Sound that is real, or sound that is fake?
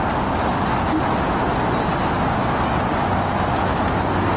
real